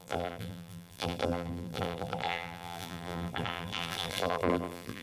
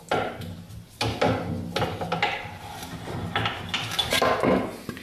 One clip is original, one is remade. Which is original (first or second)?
second